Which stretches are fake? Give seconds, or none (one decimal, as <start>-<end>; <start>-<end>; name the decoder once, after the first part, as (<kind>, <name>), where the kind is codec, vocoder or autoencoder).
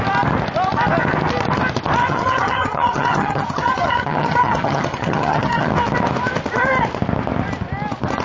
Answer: 2.0-5.7 (vocoder, HiFi-GAN)